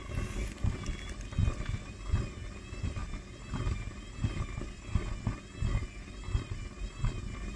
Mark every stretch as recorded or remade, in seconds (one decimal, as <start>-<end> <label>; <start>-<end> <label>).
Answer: 0.0-7.6 recorded